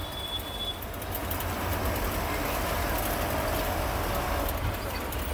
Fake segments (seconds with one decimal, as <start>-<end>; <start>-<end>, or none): 0.0-0.5; 1.2-1.9